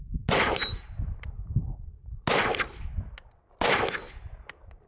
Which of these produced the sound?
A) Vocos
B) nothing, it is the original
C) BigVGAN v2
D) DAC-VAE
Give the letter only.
B